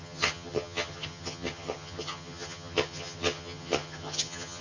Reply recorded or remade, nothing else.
remade